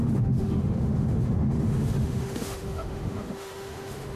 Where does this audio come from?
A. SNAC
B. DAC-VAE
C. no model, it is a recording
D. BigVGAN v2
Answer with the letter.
B